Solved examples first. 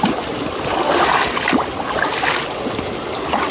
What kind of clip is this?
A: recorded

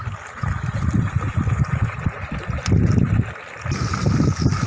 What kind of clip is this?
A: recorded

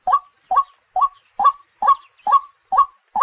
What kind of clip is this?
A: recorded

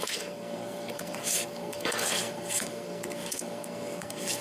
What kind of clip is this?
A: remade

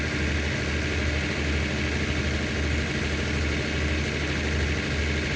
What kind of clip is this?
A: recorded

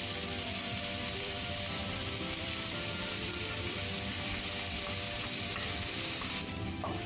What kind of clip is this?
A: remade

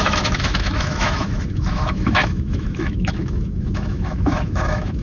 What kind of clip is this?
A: remade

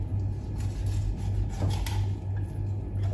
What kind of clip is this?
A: recorded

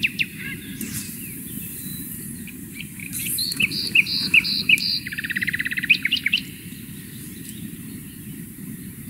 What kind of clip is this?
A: remade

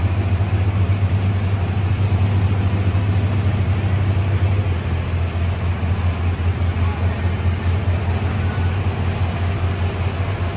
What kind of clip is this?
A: recorded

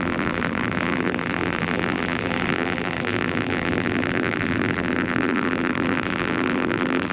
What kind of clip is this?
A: remade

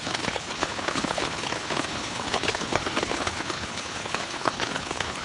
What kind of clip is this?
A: remade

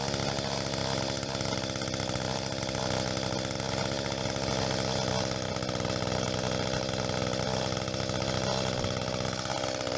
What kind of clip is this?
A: recorded